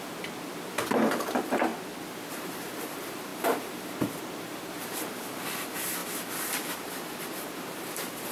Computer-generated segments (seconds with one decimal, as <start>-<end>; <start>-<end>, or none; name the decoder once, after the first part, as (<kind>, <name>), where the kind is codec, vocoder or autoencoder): 0.0-1.7 (vocoder, BigVGAN v2); 2.3-6.0; 7.2-8.3